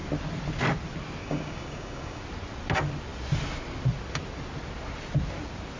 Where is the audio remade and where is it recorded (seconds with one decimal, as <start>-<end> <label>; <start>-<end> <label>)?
0.0-1.2 recorded; 1.2-2.2 remade; 2.2-5.8 recorded